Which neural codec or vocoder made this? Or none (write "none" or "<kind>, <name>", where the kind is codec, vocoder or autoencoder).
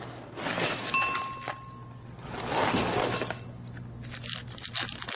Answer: none